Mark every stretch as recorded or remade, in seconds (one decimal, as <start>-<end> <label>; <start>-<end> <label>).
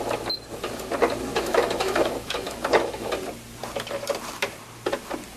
0.0-1.3 recorded; 1.3-3.1 remade; 3.1-5.4 recorded